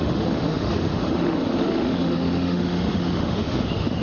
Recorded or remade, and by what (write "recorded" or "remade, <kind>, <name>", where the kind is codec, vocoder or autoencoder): remade, autoencoder, DAC-VAE